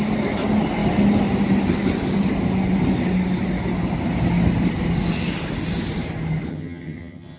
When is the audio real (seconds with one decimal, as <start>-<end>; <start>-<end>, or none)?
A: 0.0-6.5